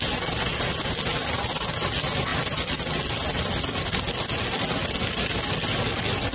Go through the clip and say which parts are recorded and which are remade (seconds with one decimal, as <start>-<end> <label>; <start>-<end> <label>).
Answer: 0.0-6.3 recorded

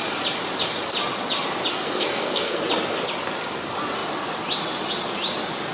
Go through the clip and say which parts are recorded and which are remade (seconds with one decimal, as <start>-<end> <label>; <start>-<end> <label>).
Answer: 0.0-1.7 recorded; 1.7-2.6 remade; 2.6-5.7 recorded